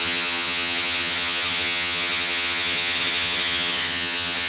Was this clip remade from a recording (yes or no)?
yes